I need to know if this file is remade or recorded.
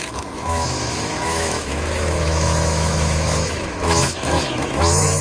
remade